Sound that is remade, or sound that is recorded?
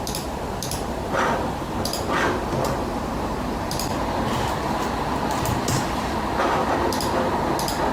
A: recorded